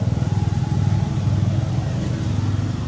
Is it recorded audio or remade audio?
recorded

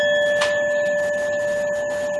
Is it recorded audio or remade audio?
recorded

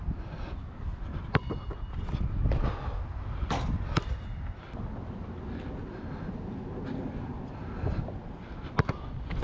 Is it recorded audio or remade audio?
recorded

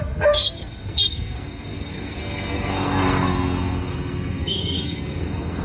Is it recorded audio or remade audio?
remade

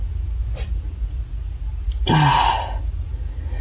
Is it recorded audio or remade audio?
recorded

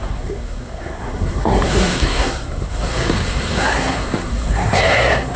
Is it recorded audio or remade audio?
remade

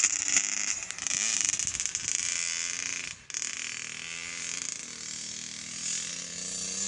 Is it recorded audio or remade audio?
recorded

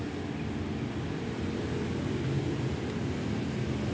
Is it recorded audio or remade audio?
recorded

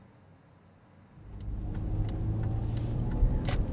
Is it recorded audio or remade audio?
recorded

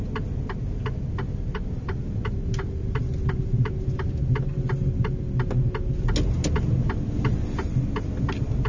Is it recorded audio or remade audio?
recorded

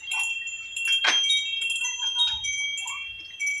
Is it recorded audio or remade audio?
recorded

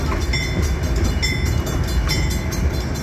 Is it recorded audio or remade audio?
recorded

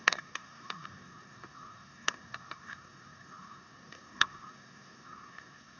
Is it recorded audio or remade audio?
remade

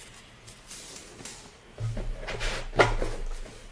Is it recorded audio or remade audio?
recorded